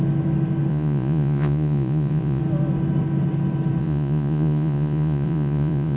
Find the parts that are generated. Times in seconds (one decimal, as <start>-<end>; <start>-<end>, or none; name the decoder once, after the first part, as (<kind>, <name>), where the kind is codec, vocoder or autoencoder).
0.7-2.4 (vocoder, Vocos); 3.8-6.0